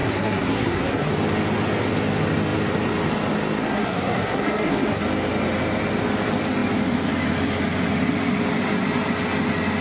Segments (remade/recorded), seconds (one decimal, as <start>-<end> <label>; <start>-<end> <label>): 0.0-1.1 remade; 1.1-3.6 recorded; 3.6-5.0 remade; 5.0-9.8 recorded